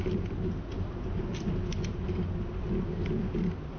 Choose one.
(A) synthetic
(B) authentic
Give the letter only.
B